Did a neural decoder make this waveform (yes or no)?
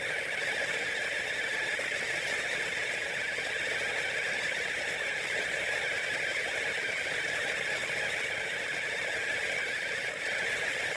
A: no